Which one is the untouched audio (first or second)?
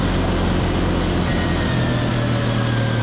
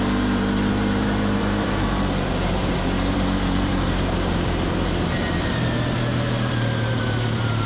first